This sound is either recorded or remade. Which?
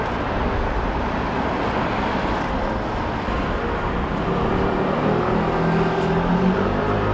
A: recorded